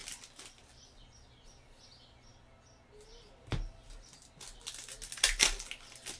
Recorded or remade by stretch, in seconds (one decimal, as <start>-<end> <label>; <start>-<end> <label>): 0.0-0.8 remade; 0.8-6.2 recorded